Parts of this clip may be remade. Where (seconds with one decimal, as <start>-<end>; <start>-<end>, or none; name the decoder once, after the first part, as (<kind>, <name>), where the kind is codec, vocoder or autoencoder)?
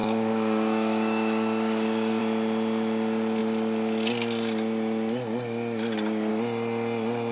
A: 0.0-2.2 (codec, DAC)